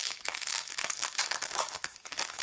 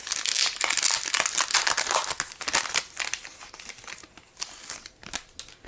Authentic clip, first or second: second